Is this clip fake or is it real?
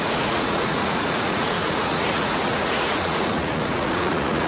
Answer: fake